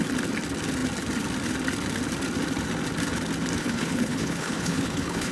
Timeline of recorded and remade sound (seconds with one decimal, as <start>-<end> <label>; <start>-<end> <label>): 0.0-3.6 recorded; 3.6-5.3 remade